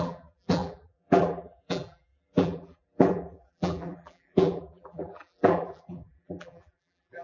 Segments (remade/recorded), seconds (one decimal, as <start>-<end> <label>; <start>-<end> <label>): 0.0-7.2 remade